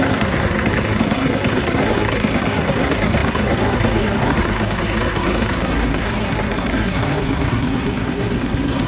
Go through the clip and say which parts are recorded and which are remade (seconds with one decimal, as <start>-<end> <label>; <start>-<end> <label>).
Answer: 0.0-8.9 remade